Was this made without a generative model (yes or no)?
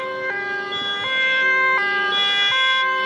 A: yes